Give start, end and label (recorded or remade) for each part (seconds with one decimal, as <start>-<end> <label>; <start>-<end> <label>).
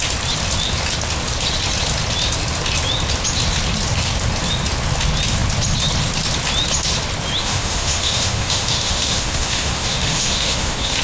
0.0-7.4 recorded; 7.4-11.0 remade